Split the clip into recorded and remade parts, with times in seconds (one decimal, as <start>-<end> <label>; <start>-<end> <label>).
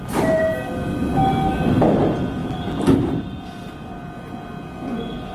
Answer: 0.0-2.4 recorded; 2.4-3.1 remade; 3.1-5.3 recorded